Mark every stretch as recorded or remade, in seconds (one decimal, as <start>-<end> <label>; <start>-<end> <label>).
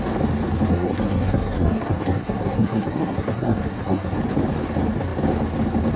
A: 0.0-0.7 recorded; 0.7-4.2 remade; 4.2-6.0 recorded